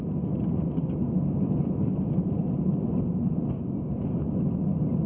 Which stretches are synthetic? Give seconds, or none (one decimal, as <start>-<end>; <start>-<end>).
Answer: none